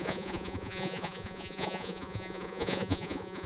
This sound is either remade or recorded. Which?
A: remade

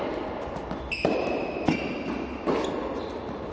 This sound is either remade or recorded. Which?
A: recorded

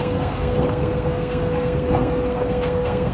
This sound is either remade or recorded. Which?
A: remade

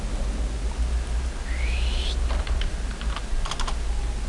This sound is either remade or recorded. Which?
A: recorded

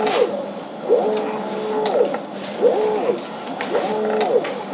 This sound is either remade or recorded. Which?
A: recorded